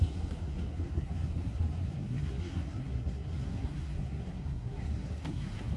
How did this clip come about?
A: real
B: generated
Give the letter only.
B